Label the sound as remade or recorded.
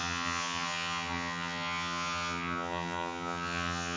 remade